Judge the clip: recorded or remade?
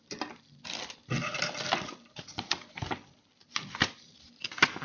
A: remade